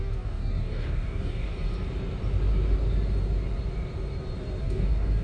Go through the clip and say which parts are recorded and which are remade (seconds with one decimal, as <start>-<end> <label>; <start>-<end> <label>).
0.0-1.5 remade; 1.5-4.6 recorded; 4.6-5.2 remade